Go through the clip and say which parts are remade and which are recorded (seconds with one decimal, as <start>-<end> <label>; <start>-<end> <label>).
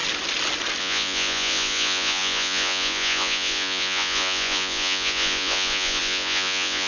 0.0-0.8 recorded; 0.8-6.9 remade